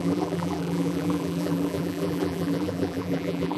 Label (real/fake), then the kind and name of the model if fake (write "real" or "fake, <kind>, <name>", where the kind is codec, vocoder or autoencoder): fake, vocoder, BigVGAN v2